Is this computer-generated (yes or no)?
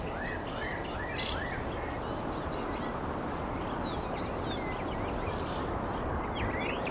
no